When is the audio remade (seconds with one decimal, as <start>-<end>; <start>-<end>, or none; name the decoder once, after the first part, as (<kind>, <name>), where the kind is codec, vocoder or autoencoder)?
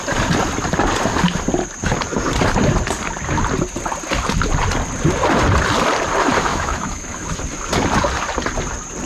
6.5-7.4 (autoencoder, DAC-VAE)